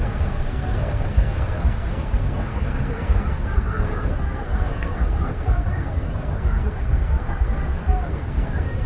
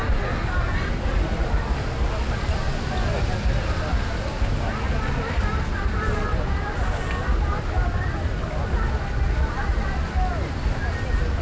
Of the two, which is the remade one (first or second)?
first